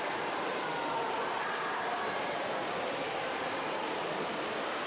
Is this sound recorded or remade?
recorded